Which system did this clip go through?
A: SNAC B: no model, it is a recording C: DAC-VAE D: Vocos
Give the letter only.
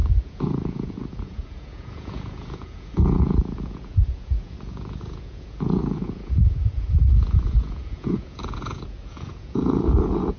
D